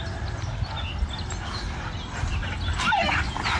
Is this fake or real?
real